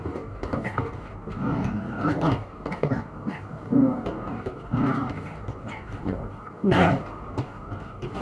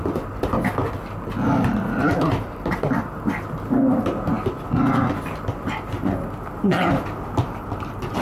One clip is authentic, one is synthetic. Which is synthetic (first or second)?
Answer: first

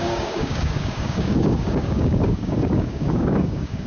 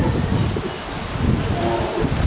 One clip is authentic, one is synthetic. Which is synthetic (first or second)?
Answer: first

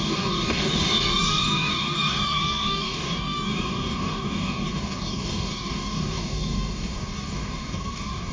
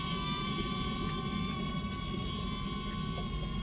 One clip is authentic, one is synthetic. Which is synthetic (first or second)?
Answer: first